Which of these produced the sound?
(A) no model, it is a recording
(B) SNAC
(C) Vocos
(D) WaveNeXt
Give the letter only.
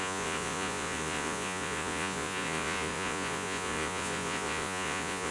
C